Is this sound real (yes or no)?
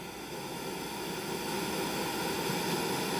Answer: yes